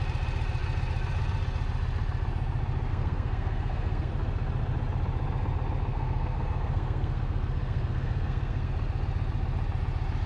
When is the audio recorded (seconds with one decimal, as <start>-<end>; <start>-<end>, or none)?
0.0-2.9; 4.1-5.9; 8.7-10.3